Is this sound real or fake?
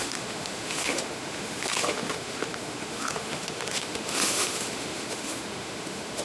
fake